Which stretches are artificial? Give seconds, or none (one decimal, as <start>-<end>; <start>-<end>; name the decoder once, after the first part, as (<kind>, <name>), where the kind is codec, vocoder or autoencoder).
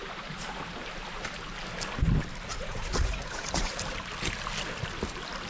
2.5-3.7 (vocoder, Vocos)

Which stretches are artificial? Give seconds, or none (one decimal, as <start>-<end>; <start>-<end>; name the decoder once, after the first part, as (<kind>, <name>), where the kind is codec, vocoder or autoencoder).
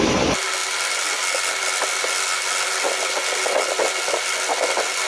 none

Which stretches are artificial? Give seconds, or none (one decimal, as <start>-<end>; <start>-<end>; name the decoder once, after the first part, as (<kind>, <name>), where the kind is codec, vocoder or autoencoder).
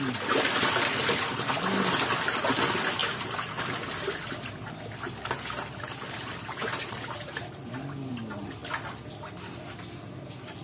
none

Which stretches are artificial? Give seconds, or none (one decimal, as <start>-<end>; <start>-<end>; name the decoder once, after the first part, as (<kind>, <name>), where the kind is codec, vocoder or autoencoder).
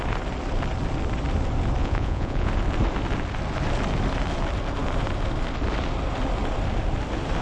1.8-2.5 (vocoder, Vocos)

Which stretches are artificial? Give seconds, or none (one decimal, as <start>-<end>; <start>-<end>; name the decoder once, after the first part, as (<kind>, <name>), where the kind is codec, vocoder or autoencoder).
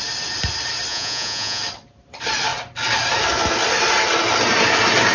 0.9-1.6 (vocoder, Vocos)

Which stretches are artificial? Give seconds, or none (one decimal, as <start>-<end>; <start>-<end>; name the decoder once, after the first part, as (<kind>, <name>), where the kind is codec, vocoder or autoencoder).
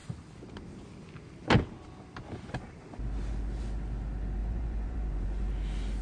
4.4-5.5 (vocoder, Vocos)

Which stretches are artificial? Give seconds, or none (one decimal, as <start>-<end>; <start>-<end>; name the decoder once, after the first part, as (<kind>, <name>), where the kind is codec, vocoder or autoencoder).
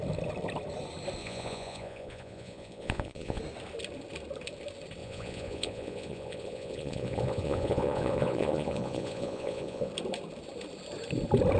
1.2-3.4 (vocoder, Vocos); 5.0-9.9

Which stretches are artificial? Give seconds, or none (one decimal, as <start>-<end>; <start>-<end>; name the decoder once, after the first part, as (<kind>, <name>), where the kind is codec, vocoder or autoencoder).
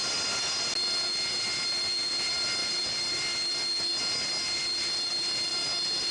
none